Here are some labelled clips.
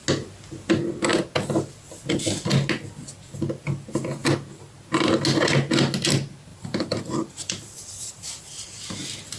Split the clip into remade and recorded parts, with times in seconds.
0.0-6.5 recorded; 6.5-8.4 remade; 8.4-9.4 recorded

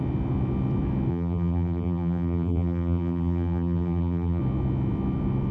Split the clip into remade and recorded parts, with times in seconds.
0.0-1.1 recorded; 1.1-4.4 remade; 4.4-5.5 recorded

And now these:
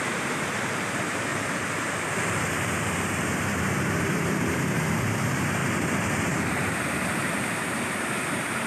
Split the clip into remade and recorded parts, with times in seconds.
0.0-1.3 remade; 1.3-2.0 recorded; 2.0-5.6 remade; 5.6-6.4 recorded; 6.4-8.7 remade

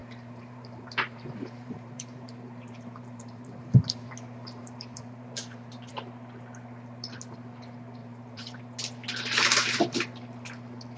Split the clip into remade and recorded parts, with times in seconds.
0.0-4.1 remade; 4.1-4.6 recorded; 4.6-5.9 remade; 5.9-8.0 recorded; 8.0-8.6 remade; 8.6-11.0 recorded